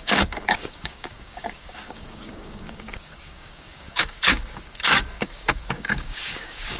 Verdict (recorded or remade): remade